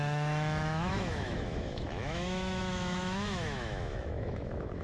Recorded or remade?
remade